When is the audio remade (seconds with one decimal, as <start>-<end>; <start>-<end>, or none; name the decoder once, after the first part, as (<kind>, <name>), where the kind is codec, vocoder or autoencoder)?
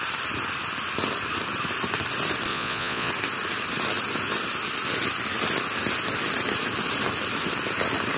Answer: 2.5-3.1 (vocoder, Vocos)